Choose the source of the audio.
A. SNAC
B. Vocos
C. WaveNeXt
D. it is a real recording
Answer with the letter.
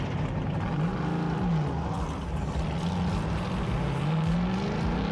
D